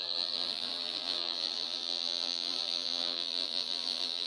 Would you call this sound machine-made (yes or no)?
yes